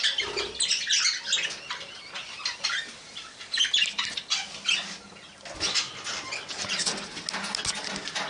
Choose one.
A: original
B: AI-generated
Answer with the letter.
A